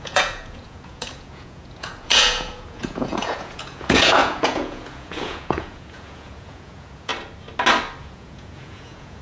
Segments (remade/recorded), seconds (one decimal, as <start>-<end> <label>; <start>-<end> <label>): 0.0-7.1 remade; 7.1-8.0 recorded; 8.0-9.2 remade